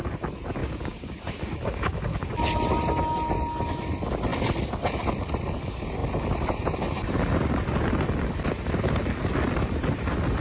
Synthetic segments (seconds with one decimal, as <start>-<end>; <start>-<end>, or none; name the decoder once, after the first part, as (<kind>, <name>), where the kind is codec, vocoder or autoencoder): 0.6-2.3 (codec, DAC)